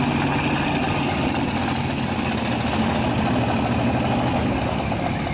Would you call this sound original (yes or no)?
yes